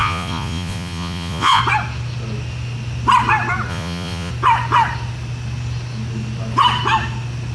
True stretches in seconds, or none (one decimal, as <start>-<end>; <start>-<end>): 1.6-3.7; 4.3-7.5